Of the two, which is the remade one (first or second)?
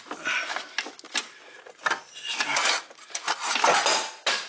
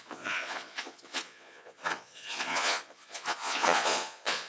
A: second